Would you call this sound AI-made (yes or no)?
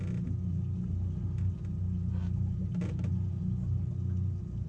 no